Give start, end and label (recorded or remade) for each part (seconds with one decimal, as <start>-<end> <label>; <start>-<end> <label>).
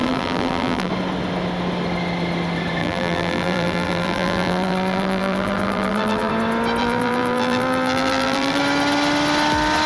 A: 0.0-0.9 remade; 0.9-2.8 recorded; 2.8-6.3 remade; 6.3-6.8 recorded; 6.8-8.6 remade; 8.6-9.9 recorded